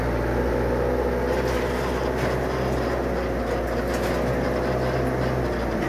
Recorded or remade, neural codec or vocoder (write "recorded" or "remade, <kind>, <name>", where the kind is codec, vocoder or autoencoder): recorded